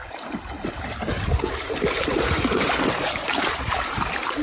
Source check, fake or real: fake